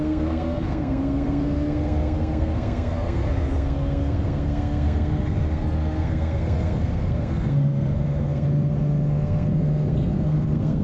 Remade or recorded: remade